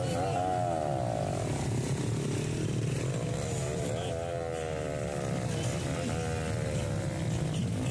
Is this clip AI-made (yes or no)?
no